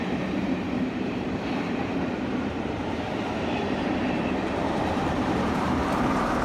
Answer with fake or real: fake